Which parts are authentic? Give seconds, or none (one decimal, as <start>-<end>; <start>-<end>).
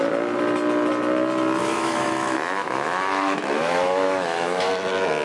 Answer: 0.0-1.6; 4.7-5.2